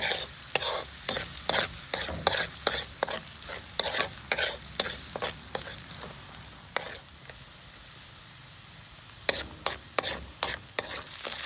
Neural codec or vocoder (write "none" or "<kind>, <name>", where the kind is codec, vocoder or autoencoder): none